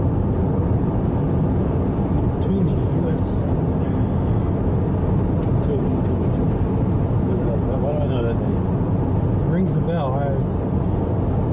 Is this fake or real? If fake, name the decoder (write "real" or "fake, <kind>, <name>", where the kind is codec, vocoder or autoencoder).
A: real